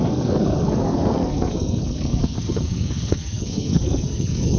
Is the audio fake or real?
fake